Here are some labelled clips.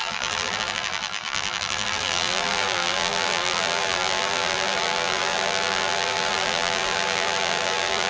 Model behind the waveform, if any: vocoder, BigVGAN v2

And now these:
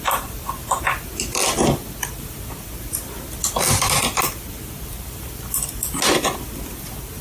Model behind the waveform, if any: none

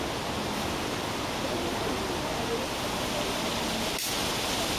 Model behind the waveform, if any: none